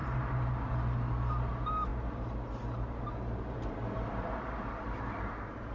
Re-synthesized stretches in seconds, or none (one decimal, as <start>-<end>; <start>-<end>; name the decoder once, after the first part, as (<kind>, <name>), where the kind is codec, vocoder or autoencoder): none